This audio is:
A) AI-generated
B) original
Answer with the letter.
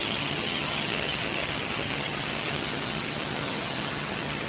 A